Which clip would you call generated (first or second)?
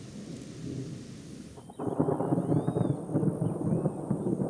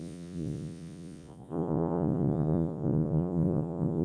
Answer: second